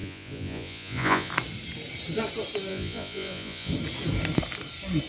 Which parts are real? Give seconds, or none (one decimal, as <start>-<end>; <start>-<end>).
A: 1.3-2.7; 3.7-5.1